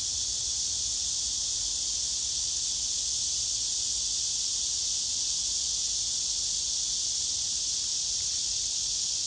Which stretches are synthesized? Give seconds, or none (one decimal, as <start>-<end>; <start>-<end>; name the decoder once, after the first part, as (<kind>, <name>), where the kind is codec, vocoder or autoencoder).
7.9-9.3 (vocoder, BigVGAN v2)